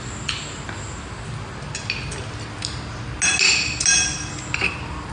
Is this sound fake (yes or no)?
no